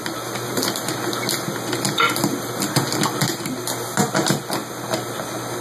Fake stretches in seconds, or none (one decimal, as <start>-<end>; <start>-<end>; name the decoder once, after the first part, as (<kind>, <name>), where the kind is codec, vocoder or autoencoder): none